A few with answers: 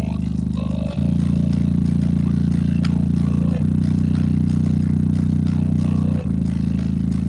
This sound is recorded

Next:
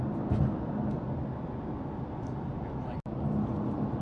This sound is recorded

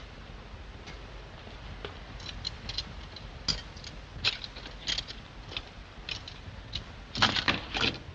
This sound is recorded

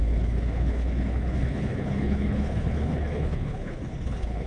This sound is remade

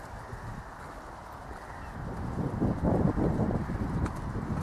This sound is recorded